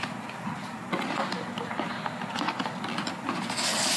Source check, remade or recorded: recorded